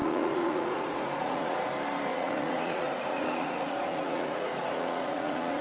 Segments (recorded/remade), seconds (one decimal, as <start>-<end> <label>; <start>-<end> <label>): 0.0-1.7 remade; 1.7-2.1 recorded; 2.1-5.6 remade